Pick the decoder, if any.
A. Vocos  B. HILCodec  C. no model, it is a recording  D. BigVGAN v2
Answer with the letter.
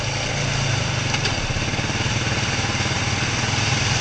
C